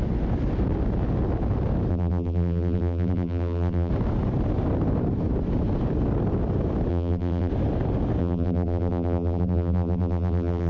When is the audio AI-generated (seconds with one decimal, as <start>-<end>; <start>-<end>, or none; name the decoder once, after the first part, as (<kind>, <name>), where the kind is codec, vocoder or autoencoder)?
1.9-3.9 (vocoder, BigVGAN v2); 6.9-7.5; 8.2-10.7